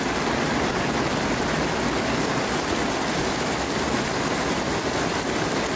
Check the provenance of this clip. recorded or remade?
recorded